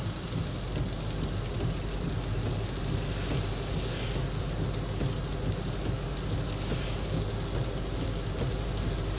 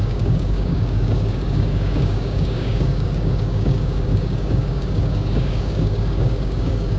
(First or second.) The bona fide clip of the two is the first